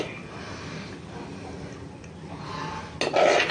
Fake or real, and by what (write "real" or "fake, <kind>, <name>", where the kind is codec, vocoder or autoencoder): real